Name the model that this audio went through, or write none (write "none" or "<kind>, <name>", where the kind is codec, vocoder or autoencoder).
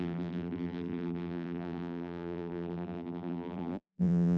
vocoder, BigVGAN v2